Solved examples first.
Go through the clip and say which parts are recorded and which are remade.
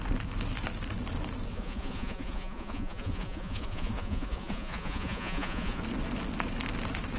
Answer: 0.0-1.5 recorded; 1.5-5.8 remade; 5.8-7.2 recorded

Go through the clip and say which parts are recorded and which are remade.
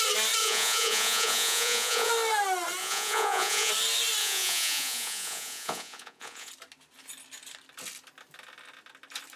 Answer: 0.0-0.4 recorded; 0.4-2.1 remade; 2.1-2.8 recorded; 2.8-3.7 remade; 3.7-4.2 recorded; 4.2-6.5 remade; 6.5-9.4 recorded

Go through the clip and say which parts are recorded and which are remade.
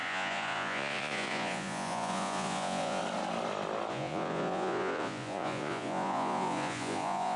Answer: 0.0-3.0 remade; 3.0-3.9 recorded; 3.9-7.4 remade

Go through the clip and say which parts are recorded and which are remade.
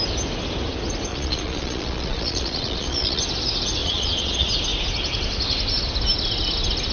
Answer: 0.0-1.1 recorded; 1.1-3.2 remade; 3.2-3.8 recorded; 3.8-4.5 remade; 4.5-6.9 recorded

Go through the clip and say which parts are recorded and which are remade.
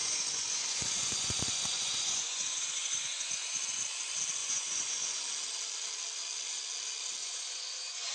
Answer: 0.0-4.0 remade; 4.0-4.4 recorded; 4.4-5.2 remade; 5.2-7.2 recorded; 7.2-8.1 remade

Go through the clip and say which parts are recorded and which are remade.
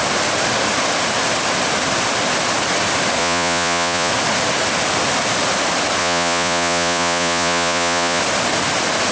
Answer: 0.0-3.2 recorded; 3.2-4.1 remade; 4.1-6.0 recorded; 6.0-8.2 remade; 8.2-9.1 recorded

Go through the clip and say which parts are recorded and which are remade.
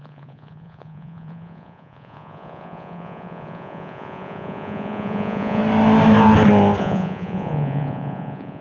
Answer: 0.0-5.6 remade; 5.6-6.8 recorded; 6.8-8.6 remade